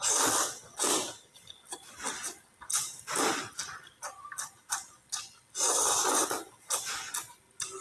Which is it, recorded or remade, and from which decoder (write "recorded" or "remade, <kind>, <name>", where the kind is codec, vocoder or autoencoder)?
recorded